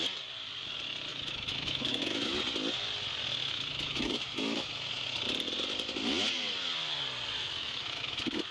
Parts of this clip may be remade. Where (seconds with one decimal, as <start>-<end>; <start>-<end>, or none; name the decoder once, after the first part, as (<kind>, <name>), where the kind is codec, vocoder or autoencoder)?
1.1-2.4 (autoencoder, DAC-VAE); 3.4-5.2; 7.4-8.5